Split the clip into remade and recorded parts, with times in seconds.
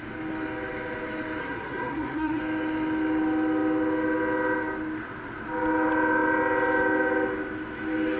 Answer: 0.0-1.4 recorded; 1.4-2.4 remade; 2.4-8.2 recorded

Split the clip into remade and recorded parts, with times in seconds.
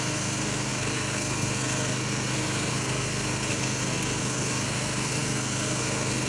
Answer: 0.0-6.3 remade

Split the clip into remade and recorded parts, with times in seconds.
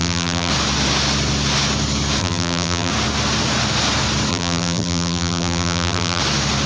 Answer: 0.0-0.5 remade; 0.5-2.2 recorded; 2.2-2.9 remade; 2.9-4.3 recorded; 4.3-6.2 remade; 6.2-6.7 recorded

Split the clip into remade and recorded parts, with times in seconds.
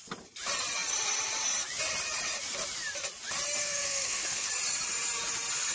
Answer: 0.0-3.6 recorded; 3.6-4.5 remade; 4.5-5.7 recorded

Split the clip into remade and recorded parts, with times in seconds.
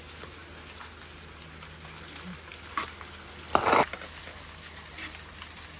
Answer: 0.0-5.8 recorded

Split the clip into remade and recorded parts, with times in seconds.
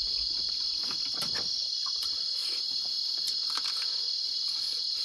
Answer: 0.0-5.0 recorded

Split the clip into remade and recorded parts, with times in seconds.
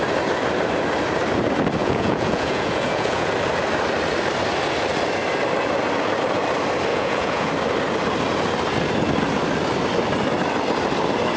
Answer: 0.0-1.8 recorded; 1.8-3.3 remade; 3.3-6.9 recorded; 6.9-7.5 remade; 7.5-11.4 recorded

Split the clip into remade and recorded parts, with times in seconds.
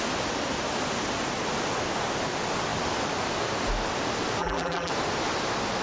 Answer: 0.0-4.4 recorded; 4.4-4.9 remade; 4.9-5.8 recorded